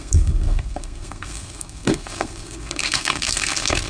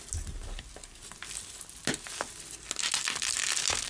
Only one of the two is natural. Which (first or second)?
second